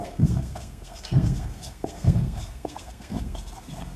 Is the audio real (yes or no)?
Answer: no